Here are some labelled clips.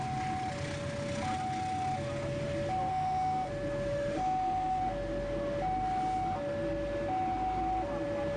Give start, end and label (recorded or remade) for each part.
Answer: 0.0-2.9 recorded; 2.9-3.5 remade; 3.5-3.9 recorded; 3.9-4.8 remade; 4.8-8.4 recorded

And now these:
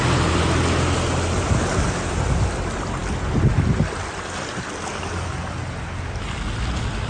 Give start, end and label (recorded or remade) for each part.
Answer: 0.0-7.1 recorded

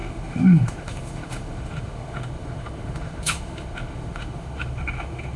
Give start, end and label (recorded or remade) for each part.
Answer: 0.0-5.4 remade